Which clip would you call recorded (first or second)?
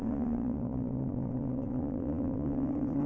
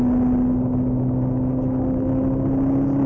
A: second